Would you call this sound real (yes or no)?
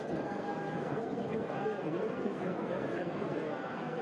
no